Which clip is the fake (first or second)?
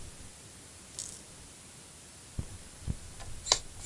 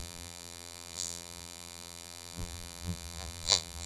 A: second